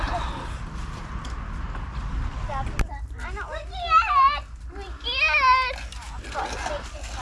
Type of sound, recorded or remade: recorded